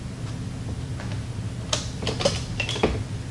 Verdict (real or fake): real